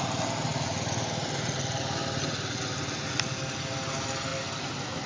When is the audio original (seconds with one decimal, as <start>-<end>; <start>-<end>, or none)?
0.0-5.1